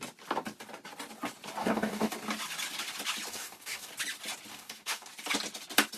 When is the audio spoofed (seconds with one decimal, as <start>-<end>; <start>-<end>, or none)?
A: 1.6-2.1; 3.3-3.9; 4.5-5.1